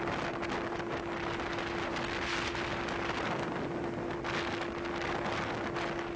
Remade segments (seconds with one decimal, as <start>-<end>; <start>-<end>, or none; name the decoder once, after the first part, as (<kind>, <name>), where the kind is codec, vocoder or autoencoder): none